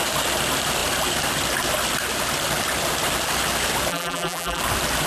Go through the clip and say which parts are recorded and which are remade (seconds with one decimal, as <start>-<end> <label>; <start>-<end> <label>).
0.0-3.9 recorded; 3.9-4.6 remade; 4.6-5.1 recorded